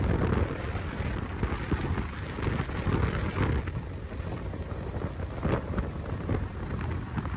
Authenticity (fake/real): real